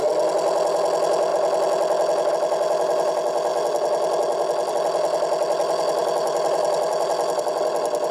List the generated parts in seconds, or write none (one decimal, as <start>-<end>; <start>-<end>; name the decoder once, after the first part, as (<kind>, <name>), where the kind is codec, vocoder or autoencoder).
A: 6.0-7.4 (vocoder, BigVGAN v2)